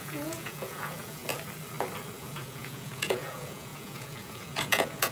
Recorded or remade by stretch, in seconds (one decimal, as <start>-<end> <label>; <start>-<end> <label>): 0.0-1.2 remade; 1.2-2.2 recorded; 2.2-5.1 remade